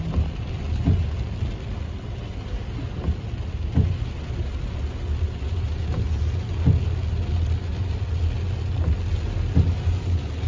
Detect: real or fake real